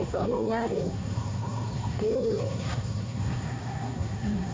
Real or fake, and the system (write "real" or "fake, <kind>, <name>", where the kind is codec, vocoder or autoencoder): fake, codec, SNAC